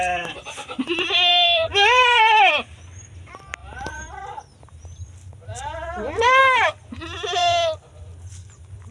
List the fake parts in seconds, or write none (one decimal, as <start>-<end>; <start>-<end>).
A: 1.3-2.5; 3.6-6.4